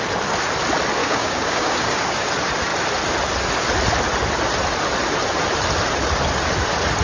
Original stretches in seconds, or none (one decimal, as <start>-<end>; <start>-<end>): 0.0-1.0; 2.2-7.0